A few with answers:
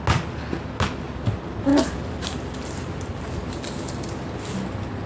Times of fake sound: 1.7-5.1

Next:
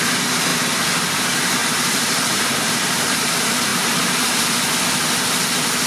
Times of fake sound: 1.6-3.3; 3.7-4.4

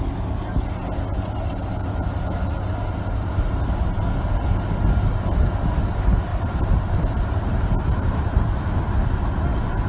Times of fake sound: 6.3-7.7